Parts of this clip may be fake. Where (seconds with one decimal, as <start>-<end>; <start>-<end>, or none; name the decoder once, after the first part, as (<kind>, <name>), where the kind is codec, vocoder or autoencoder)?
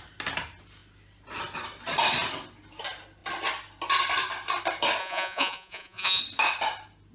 5.0-6.2 (vocoder, Vocos)